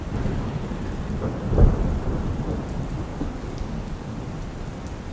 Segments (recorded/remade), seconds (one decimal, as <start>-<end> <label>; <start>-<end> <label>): 0.0-3.1 recorded; 3.1-4.2 remade; 4.2-5.1 recorded